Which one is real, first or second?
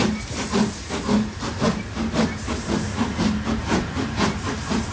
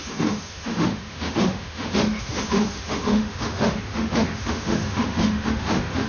first